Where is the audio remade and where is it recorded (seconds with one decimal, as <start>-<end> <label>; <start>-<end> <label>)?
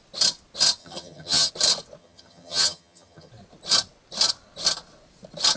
0.0-0.8 recorded; 0.8-1.5 remade; 1.5-2.0 recorded; 2.0-3.3 remade; 3.3-5.6 recorded